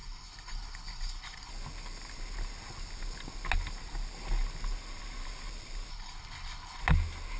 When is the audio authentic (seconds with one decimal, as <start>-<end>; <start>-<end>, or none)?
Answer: 1.5-5.9; 6.8-7.4